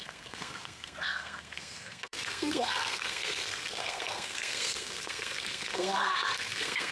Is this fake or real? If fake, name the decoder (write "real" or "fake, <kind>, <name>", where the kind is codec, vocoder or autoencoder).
fake, codec, SNAC